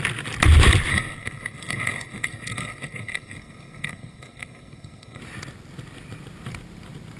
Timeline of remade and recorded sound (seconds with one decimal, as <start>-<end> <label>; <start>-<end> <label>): 0.0-0.9 recorded; 0.9-5.2 remade; 5.2-7.2 recorded